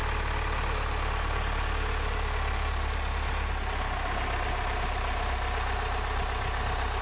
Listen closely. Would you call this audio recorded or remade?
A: recorded